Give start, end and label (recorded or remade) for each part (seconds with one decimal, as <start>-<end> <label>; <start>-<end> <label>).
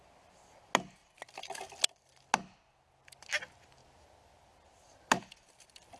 0.0-6.0 recorded